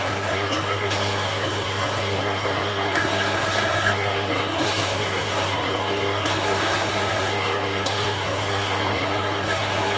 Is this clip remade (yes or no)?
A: yes